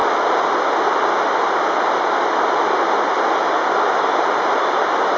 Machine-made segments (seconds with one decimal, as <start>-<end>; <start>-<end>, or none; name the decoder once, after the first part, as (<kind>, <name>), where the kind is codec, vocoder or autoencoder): none